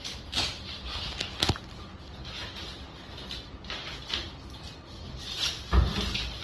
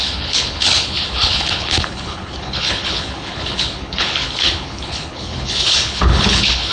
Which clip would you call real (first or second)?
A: first